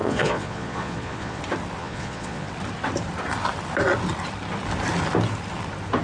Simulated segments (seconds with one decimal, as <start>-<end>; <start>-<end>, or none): 0.0-1.4; 1.8-2.5